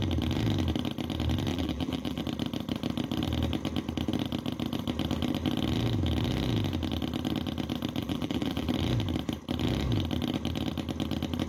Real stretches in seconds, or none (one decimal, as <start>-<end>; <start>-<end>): 0.0-1.5; 2.2-8.0; 8.7-11.5